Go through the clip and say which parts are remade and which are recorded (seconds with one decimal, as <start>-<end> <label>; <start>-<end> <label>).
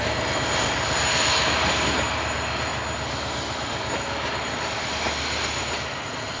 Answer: 0.0-6.4 recorded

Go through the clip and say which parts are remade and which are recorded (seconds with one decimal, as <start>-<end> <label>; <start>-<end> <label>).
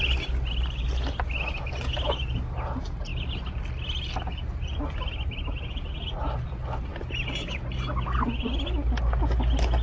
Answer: 0.0-9.8 recorded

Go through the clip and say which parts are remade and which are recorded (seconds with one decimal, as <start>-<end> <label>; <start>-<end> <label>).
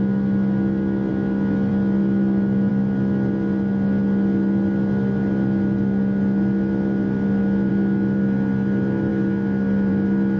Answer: 0.0-10.4 recorded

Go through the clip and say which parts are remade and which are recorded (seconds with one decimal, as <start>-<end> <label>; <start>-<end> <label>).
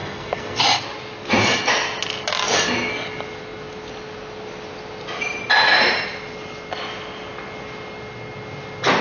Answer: 0.0-0.6 remade; 0.6-9.0 recorded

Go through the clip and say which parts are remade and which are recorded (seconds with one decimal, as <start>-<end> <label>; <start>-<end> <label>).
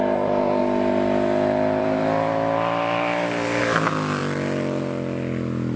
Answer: 0.0-0.6 recorded; 0.6-3.6 remade; 3.6-5.8 recorded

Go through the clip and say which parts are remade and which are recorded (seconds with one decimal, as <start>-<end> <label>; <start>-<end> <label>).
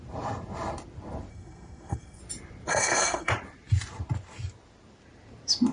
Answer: 0.0-1.3 recorded; 1.3-2.2 remade; 2.2-2.7 recorded; 2.7-3.3 remade; 3.3-5.7 recorded